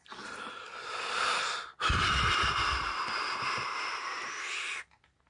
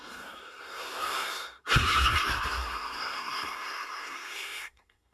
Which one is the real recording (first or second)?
first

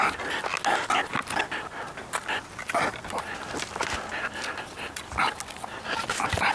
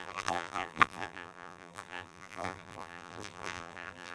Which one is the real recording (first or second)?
first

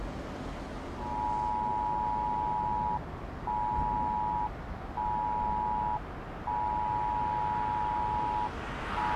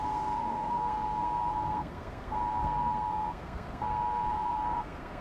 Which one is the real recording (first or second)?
first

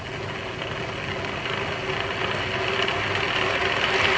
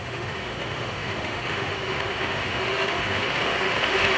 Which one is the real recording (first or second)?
first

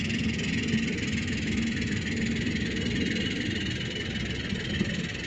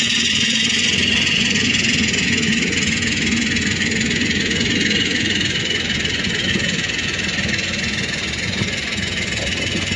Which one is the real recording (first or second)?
first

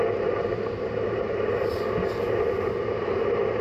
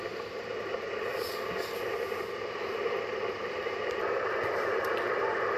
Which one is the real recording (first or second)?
first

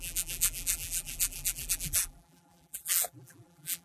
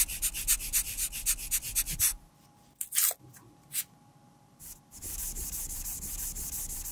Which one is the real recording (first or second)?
second